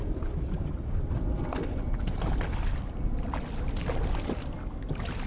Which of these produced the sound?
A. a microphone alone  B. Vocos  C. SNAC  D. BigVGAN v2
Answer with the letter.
A